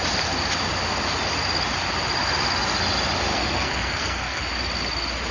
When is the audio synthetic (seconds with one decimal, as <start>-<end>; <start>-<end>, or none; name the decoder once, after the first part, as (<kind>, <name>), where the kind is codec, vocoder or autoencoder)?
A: 3.3-4.4 (codec, SNAC)